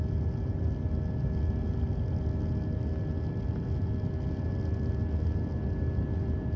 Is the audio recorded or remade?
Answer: recorded